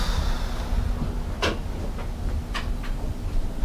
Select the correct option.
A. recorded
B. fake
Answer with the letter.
A